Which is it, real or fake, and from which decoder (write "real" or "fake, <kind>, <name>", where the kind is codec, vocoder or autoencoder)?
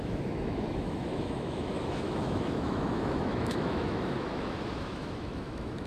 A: fake, autoencoder, DAC-VAE